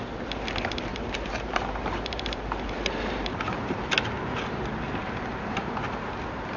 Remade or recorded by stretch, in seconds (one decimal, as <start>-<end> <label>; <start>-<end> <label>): 0.0-0.9 recorded; 0.9-3.9 remade; 3.9-5.0 recorded; 5.0-5.8 remade; 5.8-6.6 recorded